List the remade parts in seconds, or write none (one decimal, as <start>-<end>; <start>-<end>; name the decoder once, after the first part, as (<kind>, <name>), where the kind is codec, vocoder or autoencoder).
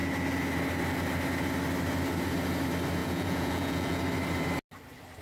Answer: 3.0-4.0 (vocoder, Vocos)